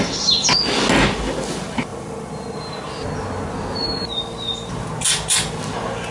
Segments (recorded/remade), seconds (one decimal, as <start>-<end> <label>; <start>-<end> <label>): 0.0-1.9 recorded; 1.9-2.7 remade; 2.7-6.1 recorded